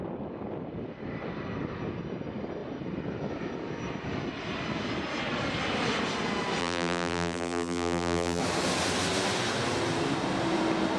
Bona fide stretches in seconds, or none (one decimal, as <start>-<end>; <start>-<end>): 0.0-6.6; 8.4-11.0